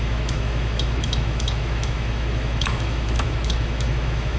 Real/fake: fake